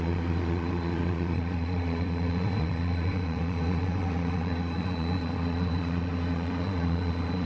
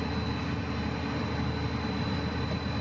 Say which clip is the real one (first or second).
second